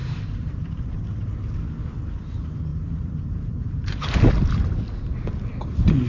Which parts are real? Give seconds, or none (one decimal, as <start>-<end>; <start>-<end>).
0.9-2.7; 3.9-6.1